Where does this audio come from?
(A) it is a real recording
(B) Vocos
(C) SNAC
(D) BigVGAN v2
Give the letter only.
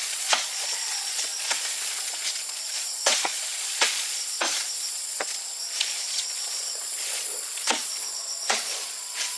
B